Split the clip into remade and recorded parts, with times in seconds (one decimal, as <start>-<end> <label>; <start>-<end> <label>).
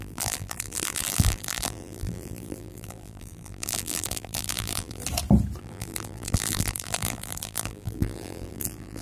0.0-5.0 remade; 5.0-5.6 recorded; 5.6-9.0 remade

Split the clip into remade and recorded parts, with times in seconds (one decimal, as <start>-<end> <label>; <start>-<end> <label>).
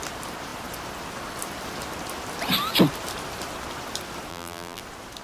0.0-4.3 recorded; 4.3-4.8 remade; 4.8-5.2 recorded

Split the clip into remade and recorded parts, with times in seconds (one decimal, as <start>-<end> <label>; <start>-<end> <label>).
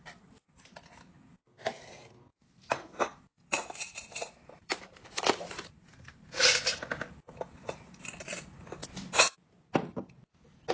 0.0-1.3 recorded; 1.3-1.9 remade; 1.9-2.3 recorded; 2.3-6.1 remade; 6.1-10.7 recorded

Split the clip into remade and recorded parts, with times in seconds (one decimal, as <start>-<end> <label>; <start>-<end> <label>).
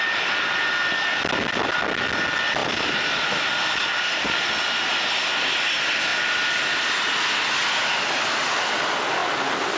0.0-2.6 recorded; 2.6-4.9 remade; 4.9-9.8 recorded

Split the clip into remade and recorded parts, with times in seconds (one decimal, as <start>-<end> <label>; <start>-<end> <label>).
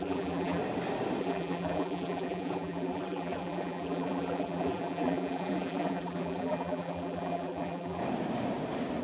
0.0-0.6 remade; 0.6-1.2 recorded; 1.2-8.0 remade; 8.0-9.0 recorded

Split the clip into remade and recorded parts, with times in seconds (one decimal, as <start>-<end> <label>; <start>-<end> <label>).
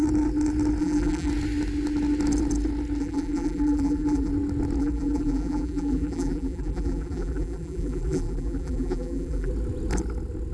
0.0-0.8 recorded; 0.8-1.3 remade; 1.3-3.0 recorded; 3.0-4.3 remade; 4.3-4.8 recorded; 4.8-9.5 remade; 9.5-10.5 recorded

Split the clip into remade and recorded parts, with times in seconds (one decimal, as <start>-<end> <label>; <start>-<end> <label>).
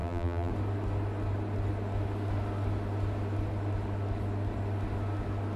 0.0-0.5 remade; 0.5-5.6 recorded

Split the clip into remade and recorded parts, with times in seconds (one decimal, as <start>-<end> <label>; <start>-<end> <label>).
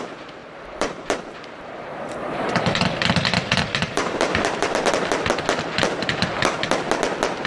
0.0-0.4 recorded; 0.4-4.9 remade; 4.9-7.5 recorded